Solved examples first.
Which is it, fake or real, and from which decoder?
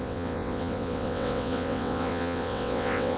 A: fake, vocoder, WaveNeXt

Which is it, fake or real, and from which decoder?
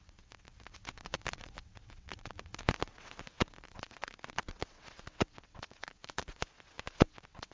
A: fake, vocoder, WaveNeXt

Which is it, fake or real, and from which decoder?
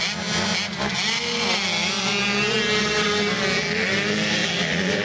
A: real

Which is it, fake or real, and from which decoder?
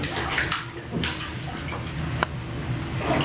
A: real